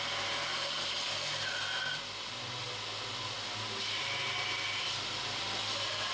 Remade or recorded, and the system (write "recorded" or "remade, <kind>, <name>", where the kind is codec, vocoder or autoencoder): recorded